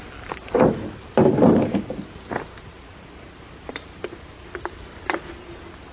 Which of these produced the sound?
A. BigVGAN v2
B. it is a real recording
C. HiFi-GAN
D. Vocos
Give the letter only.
B